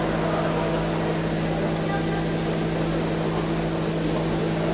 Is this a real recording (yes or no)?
yes